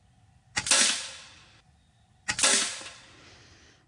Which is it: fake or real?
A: real